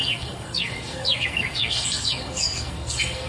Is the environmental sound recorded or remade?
remade